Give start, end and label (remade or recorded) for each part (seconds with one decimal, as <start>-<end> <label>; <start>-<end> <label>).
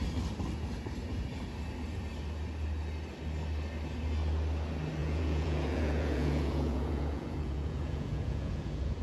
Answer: 0.0-5.0 recorded; 5.0-9.0 remade